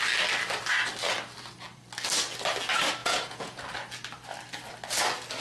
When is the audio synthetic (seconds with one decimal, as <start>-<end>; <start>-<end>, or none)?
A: 3.0-3.6